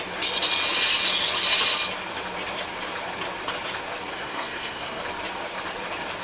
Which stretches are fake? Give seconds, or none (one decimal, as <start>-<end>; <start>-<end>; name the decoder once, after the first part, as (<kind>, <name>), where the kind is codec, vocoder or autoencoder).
4.1-5.0 (codec, SNAC)